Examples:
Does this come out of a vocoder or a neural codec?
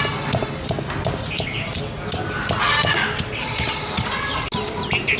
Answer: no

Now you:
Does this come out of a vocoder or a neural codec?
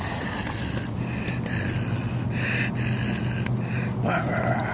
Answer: no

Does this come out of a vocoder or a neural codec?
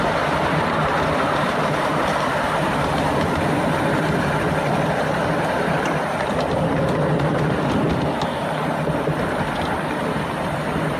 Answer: no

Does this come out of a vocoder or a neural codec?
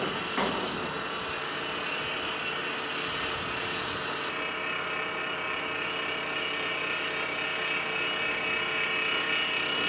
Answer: no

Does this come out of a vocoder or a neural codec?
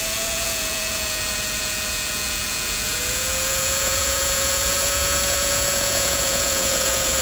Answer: yes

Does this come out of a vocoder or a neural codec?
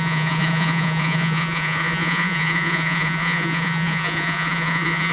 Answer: yes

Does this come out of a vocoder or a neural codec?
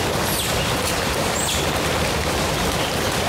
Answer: no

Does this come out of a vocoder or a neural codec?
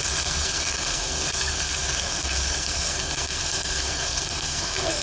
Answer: yes